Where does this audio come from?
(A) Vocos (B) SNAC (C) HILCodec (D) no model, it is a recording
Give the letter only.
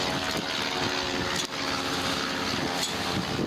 D